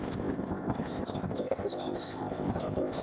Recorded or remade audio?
remade